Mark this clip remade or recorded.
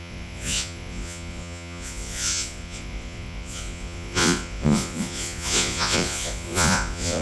remade